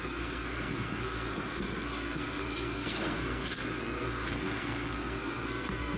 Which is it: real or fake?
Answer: fake